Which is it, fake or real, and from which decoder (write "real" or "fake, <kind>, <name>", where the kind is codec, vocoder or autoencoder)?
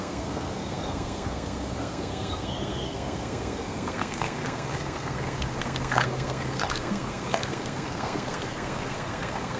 fake, codec, SNAC